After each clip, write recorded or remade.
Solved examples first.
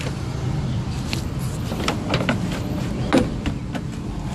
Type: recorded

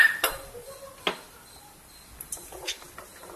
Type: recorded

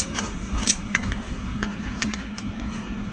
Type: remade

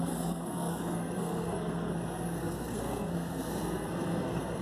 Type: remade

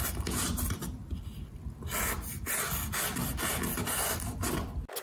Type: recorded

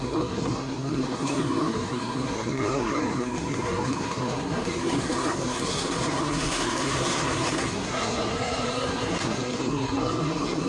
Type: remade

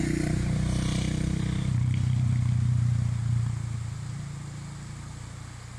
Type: recorded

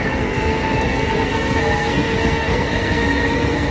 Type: remade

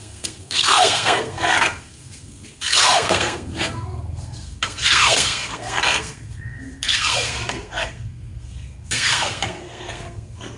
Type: remade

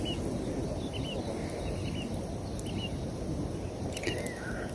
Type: recorded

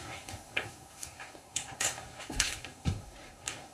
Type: remade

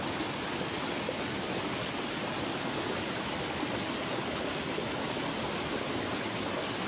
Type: recorded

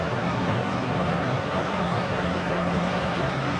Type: remade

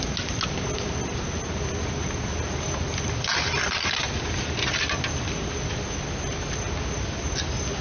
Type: recorded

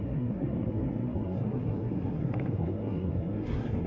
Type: remade